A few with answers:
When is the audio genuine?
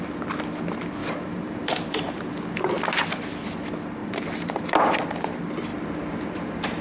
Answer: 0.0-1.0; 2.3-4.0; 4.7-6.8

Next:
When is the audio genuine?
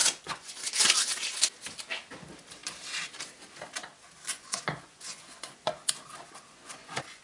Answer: 0.7-4.3; 5.7-6.5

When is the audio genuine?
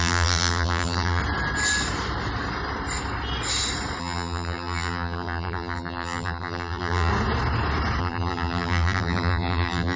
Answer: 1.2-4.0; 7.1-8.0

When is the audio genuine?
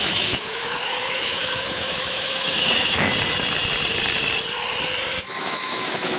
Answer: 3.1-5.4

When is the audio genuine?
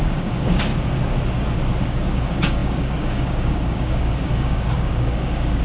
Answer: 0.7-1.8